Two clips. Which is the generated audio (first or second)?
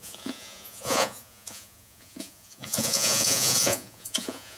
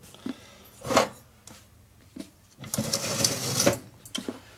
first